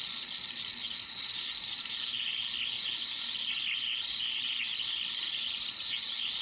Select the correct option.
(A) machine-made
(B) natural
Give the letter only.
B